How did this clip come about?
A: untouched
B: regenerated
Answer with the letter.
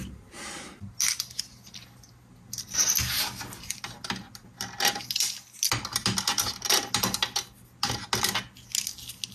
A